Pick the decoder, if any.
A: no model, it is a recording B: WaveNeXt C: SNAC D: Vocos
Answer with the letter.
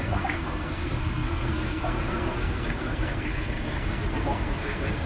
C